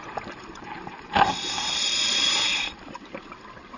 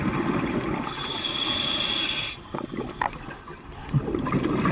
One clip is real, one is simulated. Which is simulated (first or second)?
first